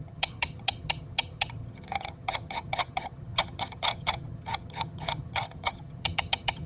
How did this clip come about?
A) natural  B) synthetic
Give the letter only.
B